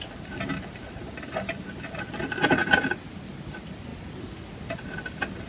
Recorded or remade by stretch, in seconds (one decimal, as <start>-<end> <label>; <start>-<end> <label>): 0.0-5.5 recorded